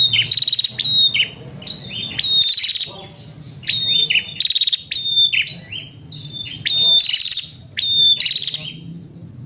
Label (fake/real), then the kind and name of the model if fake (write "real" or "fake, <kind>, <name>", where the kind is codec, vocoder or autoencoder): real